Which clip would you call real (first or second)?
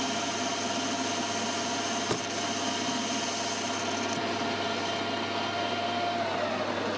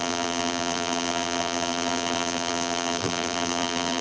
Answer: first